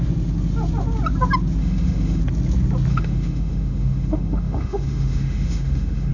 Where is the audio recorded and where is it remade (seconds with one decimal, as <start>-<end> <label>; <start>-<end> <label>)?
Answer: 0.0-1.6 recorded; 1.6-2.2 remade; 2.2-2.9 recorded; 2.9-6.1 remade